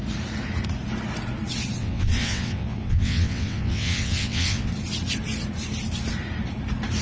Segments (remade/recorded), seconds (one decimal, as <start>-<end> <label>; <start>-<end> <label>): 0.0-1.8 recorded; 1.8-4.7 remade; 4.7-7.0 recorded